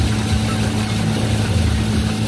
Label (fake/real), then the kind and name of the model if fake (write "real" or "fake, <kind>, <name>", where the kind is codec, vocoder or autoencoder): real